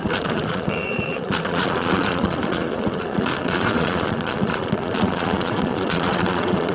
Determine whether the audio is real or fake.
fake